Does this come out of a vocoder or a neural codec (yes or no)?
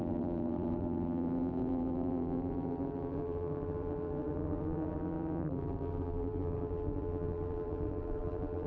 yes